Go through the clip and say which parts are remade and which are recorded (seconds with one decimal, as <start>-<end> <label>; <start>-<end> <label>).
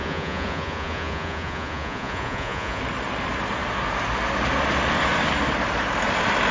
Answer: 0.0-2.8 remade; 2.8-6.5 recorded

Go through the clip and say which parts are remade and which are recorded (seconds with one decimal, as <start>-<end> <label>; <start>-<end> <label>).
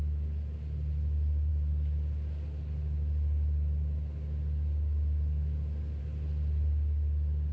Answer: 0.0-7.5 recorded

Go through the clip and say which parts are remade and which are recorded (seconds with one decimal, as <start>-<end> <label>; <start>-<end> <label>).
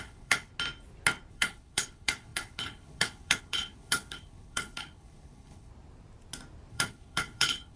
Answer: 0.0-0.5 remade; 0.5-1.3 recorded; 1.3-5.7 remade; 5.7-6.7 recorded; 6.7-7.8 remade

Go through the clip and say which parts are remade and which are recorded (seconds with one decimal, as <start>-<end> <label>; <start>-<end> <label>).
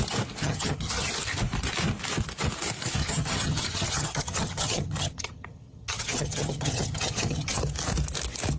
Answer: 0.0-0.4 recorded; 0.4-1.1 remade; 1.1-3.0 recorded; 3.0-7.6 remade; 7.6-8.6 recorded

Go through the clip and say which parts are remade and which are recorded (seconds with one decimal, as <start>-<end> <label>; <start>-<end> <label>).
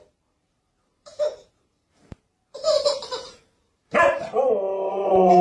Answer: 0.0-4.3 remade; 4.3-4.9 recorded; 4.9-5.4 remade